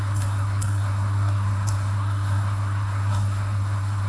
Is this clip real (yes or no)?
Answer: no